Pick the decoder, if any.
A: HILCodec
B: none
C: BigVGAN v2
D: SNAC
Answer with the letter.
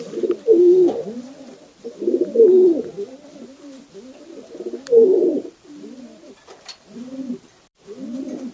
C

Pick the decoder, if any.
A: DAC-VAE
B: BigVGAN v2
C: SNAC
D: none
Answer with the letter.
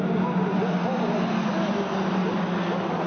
D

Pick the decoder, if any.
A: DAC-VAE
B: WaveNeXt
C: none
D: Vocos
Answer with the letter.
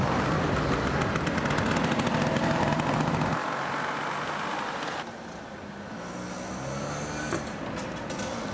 C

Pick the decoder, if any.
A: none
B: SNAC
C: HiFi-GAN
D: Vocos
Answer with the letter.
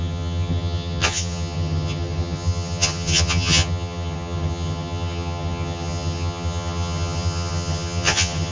C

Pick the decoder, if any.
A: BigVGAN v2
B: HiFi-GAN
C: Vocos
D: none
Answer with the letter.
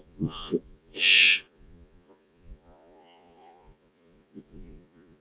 C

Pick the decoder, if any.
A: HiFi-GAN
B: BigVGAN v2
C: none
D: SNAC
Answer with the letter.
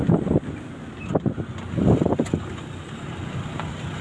C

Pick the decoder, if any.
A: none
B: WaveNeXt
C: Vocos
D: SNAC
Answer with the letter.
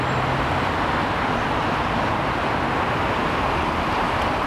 A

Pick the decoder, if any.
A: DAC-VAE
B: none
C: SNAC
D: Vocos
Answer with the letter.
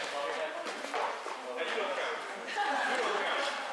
B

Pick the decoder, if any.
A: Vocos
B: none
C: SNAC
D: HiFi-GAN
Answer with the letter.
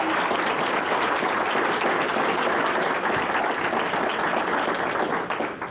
B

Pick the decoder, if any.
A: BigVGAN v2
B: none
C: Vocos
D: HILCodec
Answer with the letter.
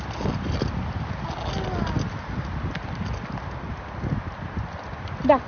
B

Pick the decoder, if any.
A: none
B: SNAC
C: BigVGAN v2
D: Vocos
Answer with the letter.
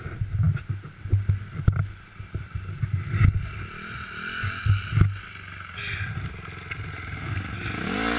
A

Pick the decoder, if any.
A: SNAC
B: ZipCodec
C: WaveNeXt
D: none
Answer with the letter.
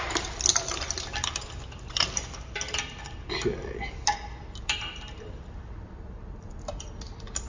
D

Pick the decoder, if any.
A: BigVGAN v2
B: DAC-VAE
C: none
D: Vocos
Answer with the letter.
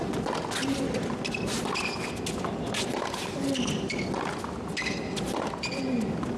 C